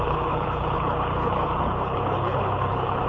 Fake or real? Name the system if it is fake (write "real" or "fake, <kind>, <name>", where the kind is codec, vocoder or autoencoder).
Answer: fake, codec, HILCodec